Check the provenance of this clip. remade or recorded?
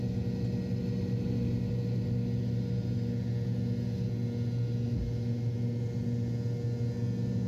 recorded